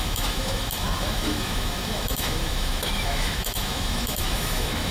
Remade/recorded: remade